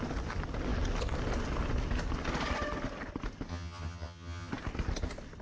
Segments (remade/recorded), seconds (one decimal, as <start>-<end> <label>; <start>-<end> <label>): 0.0-3.5 recorded; 3.5-4.5 remade; 4.5-5.4 recorded